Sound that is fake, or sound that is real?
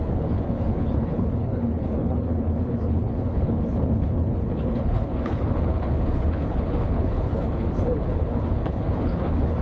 fake